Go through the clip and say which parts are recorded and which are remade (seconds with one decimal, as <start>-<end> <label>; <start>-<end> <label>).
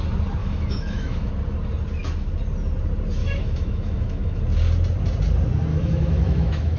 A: 0.0-0.4 recorded; 0.4-1.3 remade; 1.3-3.2 recorded; 3.2-4.4 remade; 4.4-5.7 recorded; 5.7-6.8 remade